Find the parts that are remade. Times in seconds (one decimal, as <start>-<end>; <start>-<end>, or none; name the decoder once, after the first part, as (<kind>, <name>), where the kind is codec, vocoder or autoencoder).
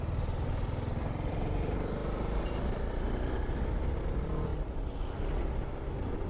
0.0-4.5 (vocoder, BigVGAN v2); 5.7-6.3